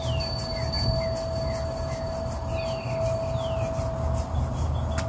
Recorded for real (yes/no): yes